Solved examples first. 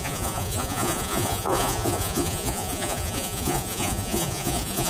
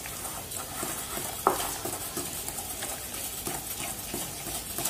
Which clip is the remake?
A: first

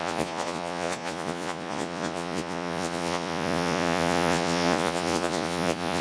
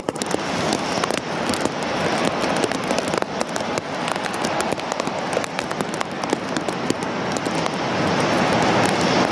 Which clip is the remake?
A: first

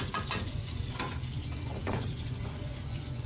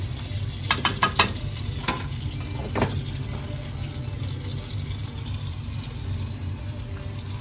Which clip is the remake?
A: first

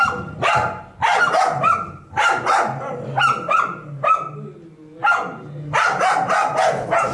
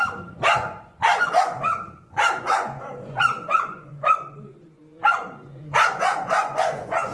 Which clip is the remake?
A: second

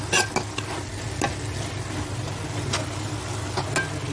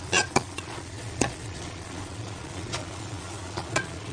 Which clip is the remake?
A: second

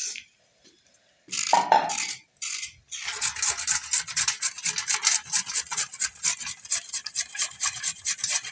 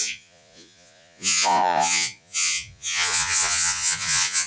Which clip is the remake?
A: second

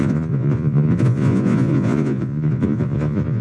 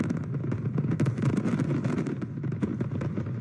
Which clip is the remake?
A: first